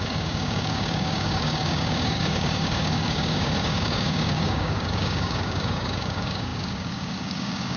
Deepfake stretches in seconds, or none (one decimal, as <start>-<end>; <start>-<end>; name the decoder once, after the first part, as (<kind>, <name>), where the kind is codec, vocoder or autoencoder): 0.0-7.8 (codec, DAC)